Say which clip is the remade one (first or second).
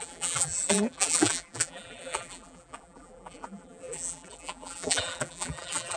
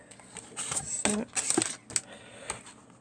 first